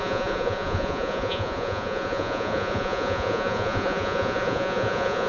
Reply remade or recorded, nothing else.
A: remade